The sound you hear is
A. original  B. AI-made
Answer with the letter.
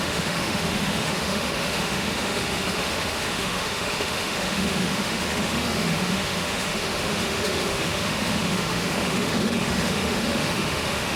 B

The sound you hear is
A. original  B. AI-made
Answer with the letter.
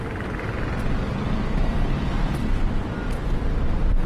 A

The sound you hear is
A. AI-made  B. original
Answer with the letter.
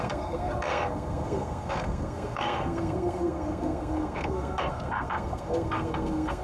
A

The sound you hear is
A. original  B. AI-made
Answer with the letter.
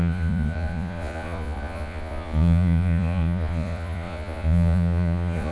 B